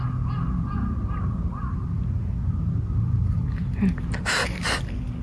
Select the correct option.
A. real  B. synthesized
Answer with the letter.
A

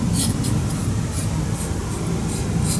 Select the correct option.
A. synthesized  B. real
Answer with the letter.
B